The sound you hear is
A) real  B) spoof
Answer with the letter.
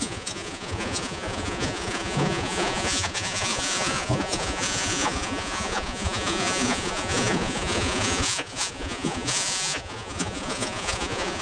B